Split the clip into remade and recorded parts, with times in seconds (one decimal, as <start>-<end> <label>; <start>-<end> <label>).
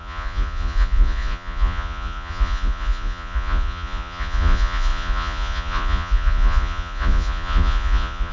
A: 0.0-8.3 remade